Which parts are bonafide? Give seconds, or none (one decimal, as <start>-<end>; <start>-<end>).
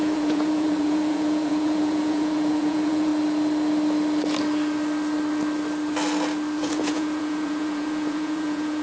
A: 3.1-6.6